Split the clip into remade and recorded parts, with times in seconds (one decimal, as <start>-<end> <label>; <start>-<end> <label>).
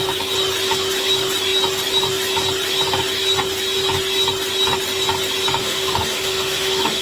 0.0-5.6 recorded; 5.6-7.0 remade